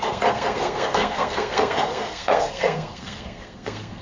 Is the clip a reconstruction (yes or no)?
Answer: yes